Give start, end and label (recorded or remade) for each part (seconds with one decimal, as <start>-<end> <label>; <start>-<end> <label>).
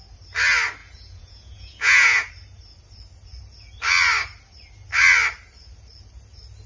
0.0-0.8 recorded; 0.8-2.3 remade; 2.3-6.7 recorded